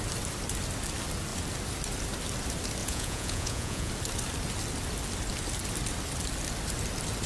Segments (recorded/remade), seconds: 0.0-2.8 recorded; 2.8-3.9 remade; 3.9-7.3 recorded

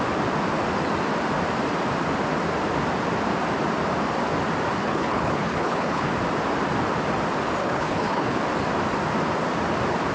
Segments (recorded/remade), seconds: 0.0-4.8 recorded; 4.8-6.1 remade; 6.1-7.6 recorded; 7.6-8.4 remade; 8.4-10.1 recorded